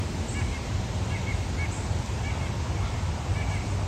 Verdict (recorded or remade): recorded